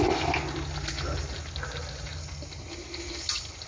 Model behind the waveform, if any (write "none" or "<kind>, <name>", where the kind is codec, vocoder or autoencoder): none